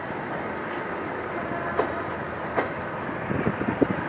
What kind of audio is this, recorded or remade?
recorded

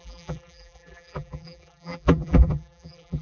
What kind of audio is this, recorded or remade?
remade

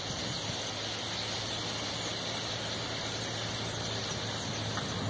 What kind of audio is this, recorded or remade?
recorded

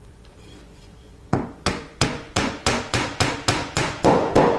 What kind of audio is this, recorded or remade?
remade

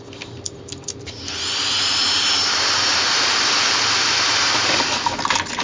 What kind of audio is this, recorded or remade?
recorded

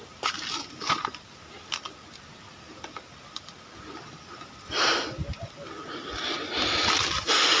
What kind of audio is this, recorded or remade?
recorded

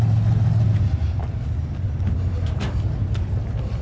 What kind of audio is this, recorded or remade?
recorded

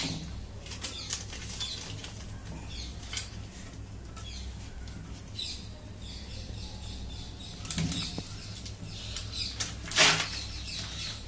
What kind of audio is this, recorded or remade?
recorded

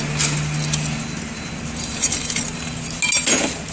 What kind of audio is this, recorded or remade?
recorded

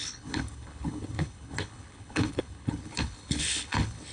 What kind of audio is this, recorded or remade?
remade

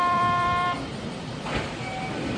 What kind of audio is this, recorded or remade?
remade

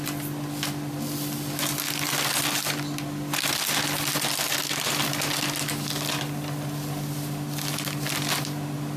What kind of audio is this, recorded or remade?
recorded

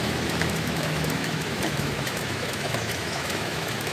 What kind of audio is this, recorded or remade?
remade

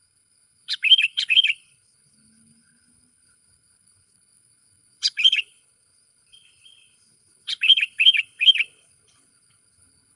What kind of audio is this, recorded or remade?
remade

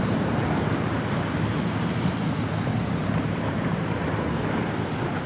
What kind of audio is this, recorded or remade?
remade